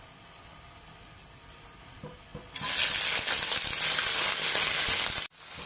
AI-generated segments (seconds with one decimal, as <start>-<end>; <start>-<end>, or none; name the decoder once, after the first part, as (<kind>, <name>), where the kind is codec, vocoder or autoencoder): none